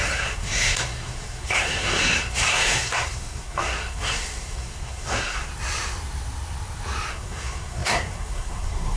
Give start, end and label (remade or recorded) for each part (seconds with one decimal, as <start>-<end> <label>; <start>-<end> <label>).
0.0-5.5 remade; 5.5-7.1 recorded; 7.1-9.0 remade